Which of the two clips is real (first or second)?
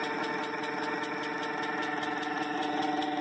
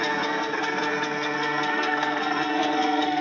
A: first